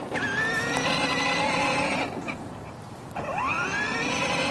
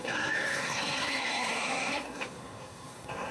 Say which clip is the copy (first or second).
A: second